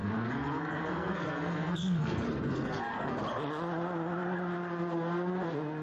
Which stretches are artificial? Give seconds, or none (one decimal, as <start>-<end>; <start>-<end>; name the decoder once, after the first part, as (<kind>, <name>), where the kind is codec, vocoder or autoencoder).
0.0-3.2 (codec, SNAC)